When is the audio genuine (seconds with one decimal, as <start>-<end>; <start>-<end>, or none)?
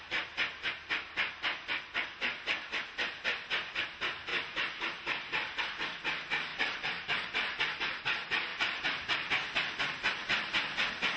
0.0-4.3; 5.6-6.5; 7.7-8.5; 9.3-11.2